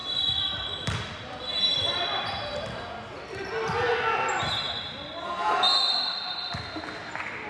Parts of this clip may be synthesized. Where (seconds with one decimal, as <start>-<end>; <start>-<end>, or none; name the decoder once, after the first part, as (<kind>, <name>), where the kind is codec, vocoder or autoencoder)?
none